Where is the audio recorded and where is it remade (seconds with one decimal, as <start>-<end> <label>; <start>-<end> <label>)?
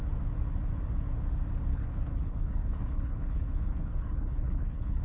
0.0-1.7 recorded; 1.7-5.0 remade